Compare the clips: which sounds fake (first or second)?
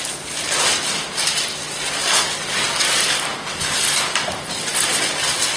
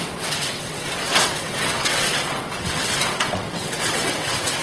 second